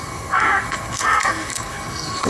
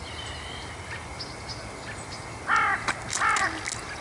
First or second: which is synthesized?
first